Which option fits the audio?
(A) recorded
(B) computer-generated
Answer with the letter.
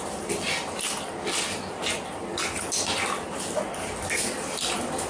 A